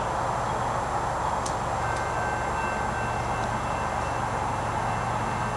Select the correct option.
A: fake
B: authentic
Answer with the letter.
B